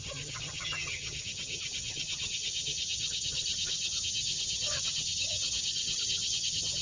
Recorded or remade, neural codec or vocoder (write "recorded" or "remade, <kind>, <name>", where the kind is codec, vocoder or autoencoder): remade, vocoder, HiFi-GAN